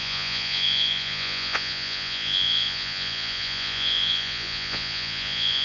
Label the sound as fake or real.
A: fake